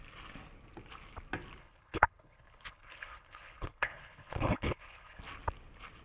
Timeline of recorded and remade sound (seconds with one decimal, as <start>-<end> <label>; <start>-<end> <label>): 0.0-1.6 recorded; 1.6-5.2 remade; 5.2-6.0 recorded